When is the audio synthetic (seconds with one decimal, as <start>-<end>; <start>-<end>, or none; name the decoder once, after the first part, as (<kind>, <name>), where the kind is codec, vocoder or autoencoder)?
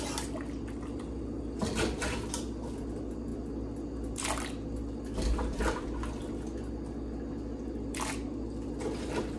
none